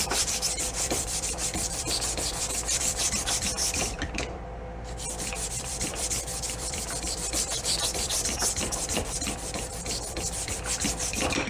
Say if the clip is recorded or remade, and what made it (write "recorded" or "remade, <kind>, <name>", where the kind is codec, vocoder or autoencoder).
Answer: remade, vocoder, BigVGAN v2